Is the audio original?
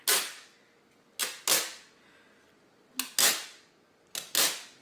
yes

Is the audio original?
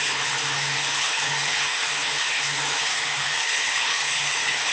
no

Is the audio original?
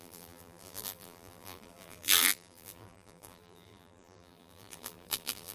no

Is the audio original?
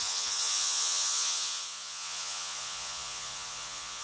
no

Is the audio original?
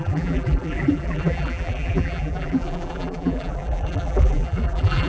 no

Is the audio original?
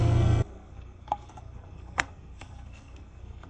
no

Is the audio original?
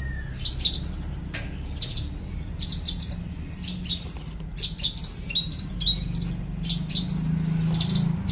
yes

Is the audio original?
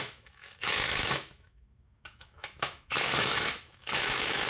no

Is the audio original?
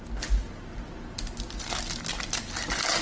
yes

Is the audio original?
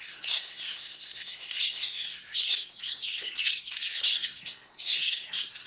no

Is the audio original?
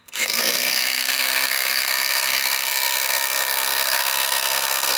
no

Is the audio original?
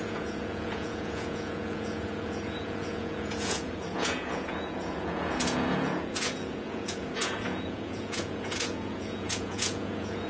no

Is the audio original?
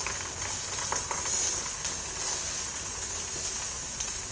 yes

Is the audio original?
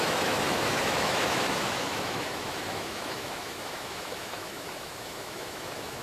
no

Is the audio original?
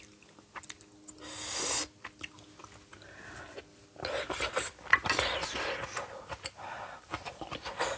yes